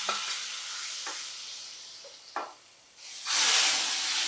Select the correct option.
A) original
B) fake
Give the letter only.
B